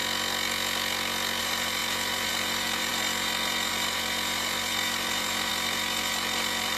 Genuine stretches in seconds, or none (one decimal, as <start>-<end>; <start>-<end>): 0.0-1.4